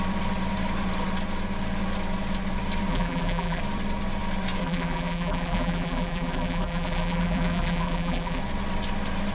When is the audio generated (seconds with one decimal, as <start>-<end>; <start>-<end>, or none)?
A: 2.9-3.6; 4.6-8.4